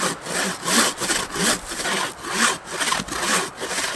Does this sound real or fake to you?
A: real